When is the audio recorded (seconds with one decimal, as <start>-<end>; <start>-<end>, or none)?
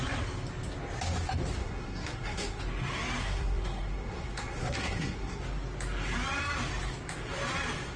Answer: 0.0-1.6; 2.6-3.2; 5.4-8.0